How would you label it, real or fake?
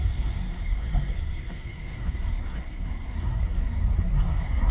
fake